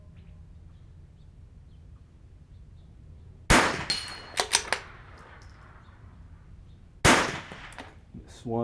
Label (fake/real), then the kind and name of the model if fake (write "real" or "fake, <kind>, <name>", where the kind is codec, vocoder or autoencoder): real